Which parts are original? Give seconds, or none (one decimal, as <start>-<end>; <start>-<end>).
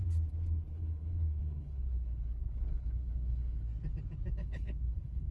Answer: 0.0-0.6; 3.7-4.3